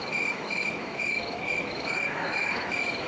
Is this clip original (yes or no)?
no